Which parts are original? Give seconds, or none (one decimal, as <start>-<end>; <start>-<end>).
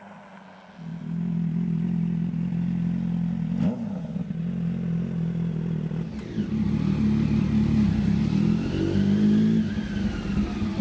0.0-10.8